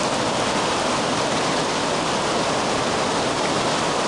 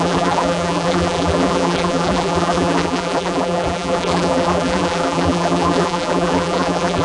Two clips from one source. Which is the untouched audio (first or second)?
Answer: first